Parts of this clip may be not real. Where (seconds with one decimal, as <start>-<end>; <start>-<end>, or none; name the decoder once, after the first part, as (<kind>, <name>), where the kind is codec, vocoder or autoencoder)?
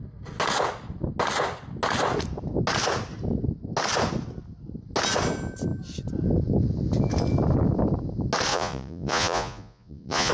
8.5-10.3 (vocoder, Vocos)